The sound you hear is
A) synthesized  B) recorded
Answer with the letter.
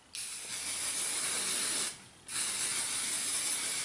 B